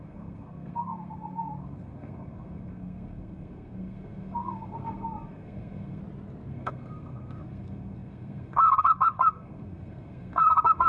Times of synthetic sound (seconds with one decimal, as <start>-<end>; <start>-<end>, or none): 0.0-6.0; 6.5-10.9